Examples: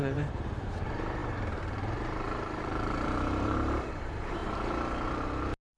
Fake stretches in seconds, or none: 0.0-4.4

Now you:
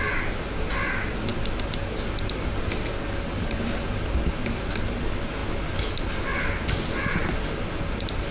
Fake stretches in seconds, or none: none

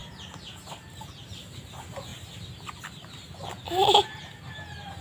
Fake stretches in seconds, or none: none

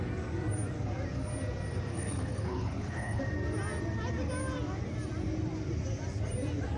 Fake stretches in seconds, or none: 1.9-3.2

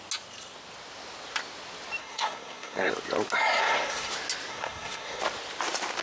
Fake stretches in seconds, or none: 2.0-2.9; 3.6-4.1; 4.5-5.2

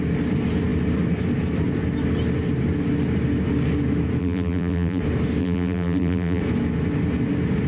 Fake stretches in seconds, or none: 4.2-5.0; 5.4-6.4